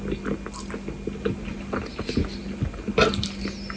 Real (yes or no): yes